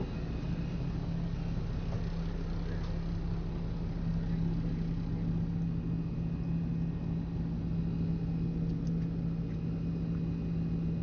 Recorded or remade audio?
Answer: recorded